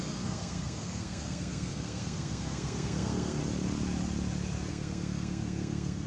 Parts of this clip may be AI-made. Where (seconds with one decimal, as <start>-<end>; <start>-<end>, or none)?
0.0-3.4; 4.7-6.1